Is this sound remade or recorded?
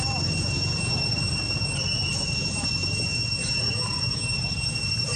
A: recorded